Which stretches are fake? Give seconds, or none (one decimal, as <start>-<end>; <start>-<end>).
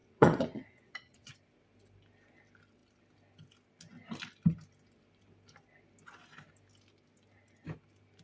0.0-1.3